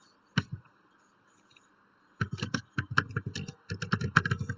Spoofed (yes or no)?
no